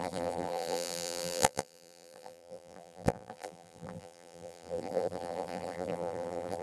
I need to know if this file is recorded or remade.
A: remade